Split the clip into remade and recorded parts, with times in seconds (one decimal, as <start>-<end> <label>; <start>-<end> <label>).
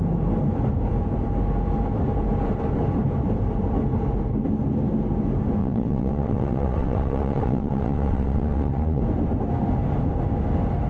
0.0-5.6 recorded; 5.6-9.0 remade; 9.0-10.9 recorded